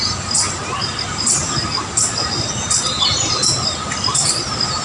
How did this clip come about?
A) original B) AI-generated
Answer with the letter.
A